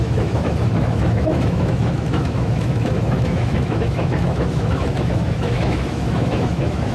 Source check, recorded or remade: remade